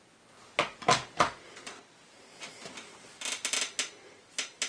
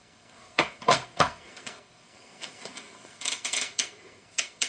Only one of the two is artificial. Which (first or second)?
second